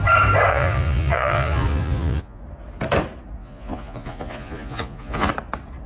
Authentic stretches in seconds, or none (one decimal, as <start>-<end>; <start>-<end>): 0.0-0.5; 2.4-3.4; 5.3-5.9